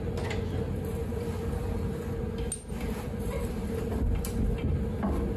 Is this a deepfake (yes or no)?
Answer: no